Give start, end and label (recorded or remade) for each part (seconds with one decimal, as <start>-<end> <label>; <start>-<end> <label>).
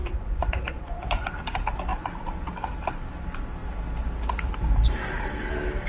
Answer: 0.0-1.3 remade; 1.3-5.9 recorded